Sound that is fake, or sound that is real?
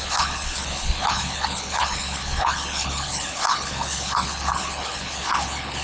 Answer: fake